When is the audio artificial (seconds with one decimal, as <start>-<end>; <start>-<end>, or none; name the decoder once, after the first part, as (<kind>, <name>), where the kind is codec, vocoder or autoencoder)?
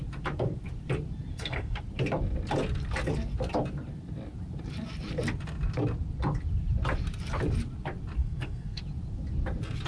1.3-1.8 (codec, SNAC); 8.2-8.8